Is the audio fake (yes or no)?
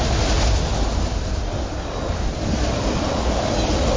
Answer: no